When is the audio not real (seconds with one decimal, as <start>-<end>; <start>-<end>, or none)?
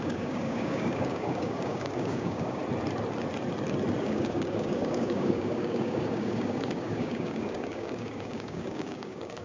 0.0-2.6; 4.0-9.4